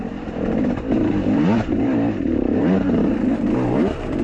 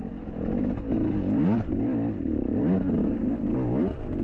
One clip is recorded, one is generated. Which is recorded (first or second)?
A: second